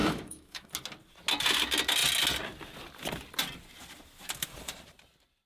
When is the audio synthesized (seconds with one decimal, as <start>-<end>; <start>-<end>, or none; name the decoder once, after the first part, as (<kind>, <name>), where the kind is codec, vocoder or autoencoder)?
0.0-0.7 (autoencoder, DAC-VAE)